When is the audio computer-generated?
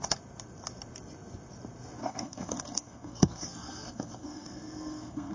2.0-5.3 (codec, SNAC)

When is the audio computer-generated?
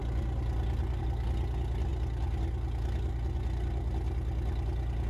none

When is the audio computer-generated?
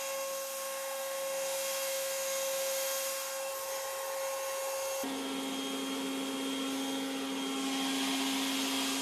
0.0-3.5 (autoencoder, DAC-VAE)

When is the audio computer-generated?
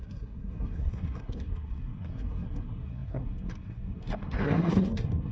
0.0-5.3 (codec, SNAC)